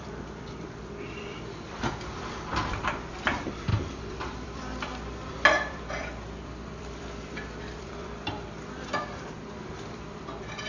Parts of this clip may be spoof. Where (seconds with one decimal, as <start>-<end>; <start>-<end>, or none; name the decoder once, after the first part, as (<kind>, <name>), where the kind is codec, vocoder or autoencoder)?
0.0-10.7 (vocoder, BigVGAN v2)